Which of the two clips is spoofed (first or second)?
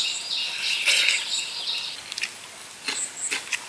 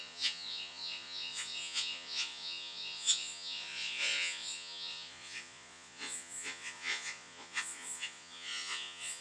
second